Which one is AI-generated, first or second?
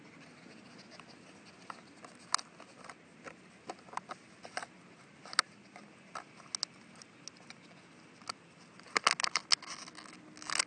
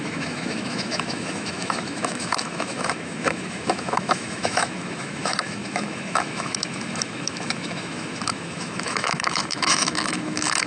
second